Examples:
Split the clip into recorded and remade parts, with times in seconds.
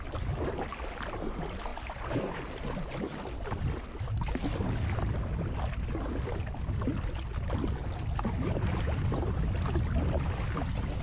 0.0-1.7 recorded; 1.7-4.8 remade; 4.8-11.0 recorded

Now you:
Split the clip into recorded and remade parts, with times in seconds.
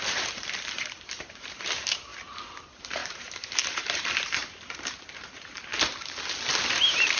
0.0-2.1 remade; 2.1-2.6 recorded; 2.6-5.7 remade; 5.7-6.8 recorded; 6.8-7.2 remade